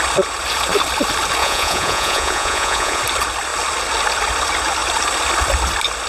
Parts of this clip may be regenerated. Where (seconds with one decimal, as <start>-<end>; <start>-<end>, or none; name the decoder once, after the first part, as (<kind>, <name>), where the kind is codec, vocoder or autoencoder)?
1.4-3.0 (vocoder, Vocos)